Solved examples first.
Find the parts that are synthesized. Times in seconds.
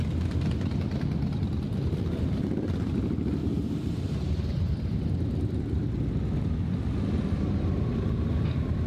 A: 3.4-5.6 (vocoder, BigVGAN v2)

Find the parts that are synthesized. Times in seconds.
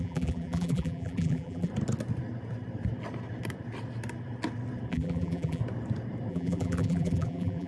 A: 0.0-1.7 (vocoder, BigVGAN v2); 4.9-5.6; 6.3-7.7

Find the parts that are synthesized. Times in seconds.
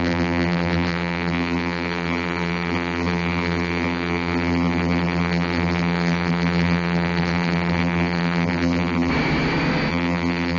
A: 0.0-9.1 (vocoder, BigVGAN v2); 9.9-10.6